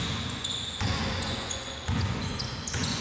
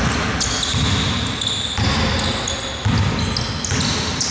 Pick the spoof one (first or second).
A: first